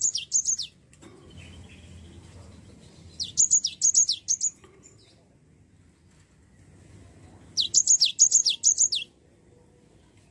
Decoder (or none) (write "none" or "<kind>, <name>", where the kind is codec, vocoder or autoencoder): none